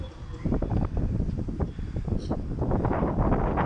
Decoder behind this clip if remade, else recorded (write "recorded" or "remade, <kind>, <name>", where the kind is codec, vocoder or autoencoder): recorded